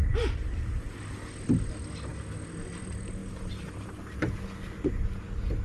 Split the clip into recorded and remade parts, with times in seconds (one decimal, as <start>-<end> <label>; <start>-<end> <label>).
0.0-0.9 remade; 0.9-5.6 recorded